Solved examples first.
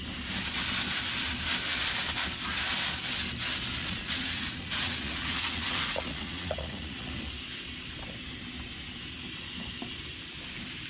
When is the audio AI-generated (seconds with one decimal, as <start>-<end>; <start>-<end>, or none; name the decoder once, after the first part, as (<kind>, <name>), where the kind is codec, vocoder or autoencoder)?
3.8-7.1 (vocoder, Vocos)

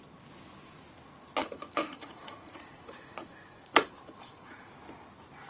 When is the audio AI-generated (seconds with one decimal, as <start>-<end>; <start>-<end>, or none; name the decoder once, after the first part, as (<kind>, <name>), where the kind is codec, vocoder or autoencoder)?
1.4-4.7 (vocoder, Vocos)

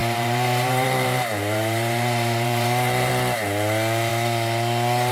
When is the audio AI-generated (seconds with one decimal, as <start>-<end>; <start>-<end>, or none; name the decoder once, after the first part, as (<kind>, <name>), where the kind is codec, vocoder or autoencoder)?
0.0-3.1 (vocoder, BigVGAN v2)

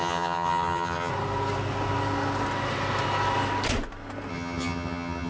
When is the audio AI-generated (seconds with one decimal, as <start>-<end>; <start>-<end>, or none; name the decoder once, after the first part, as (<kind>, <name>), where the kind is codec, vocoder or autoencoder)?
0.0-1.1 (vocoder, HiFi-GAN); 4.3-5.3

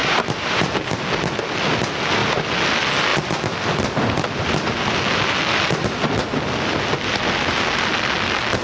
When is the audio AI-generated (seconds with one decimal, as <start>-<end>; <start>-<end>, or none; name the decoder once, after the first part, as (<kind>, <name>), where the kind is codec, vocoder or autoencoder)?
0.0-0.7 (vocoder, BigVGAN v2)

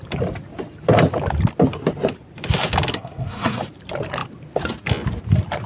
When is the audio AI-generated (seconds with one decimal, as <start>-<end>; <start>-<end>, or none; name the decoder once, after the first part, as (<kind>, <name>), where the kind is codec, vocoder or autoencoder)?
2.9-3.6 (codec, SNAC)

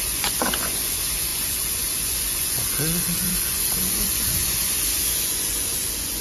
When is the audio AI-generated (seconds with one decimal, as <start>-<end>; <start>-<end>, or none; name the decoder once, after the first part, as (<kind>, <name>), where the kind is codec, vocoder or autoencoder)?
0.0-6.2 (vocoder, Vocos)